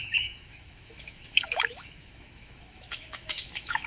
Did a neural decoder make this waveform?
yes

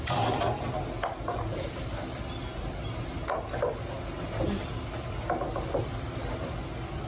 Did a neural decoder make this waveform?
no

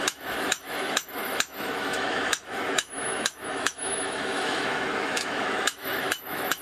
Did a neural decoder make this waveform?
yes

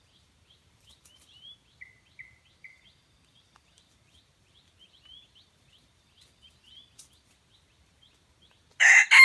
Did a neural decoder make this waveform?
no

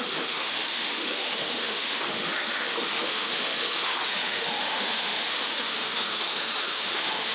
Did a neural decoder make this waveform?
yes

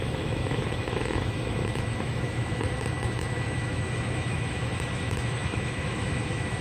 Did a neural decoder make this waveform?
yes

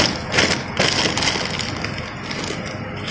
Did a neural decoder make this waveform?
no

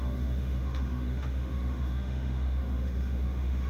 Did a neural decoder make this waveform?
yes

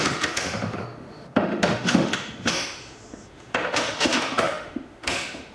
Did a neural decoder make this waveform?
yes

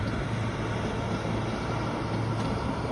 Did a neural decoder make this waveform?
no